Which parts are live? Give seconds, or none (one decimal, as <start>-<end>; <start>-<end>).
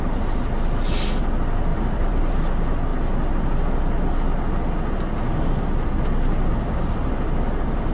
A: 0.0-1.7; 2.3-7.9